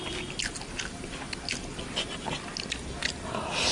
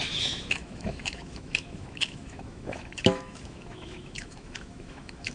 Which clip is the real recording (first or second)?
first